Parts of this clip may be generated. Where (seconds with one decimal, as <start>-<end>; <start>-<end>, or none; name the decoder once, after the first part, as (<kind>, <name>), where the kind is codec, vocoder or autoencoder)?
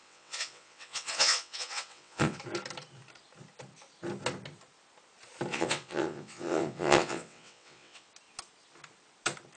0.0-2.4 (vocoder, WaveNeXt); 5.5-8.1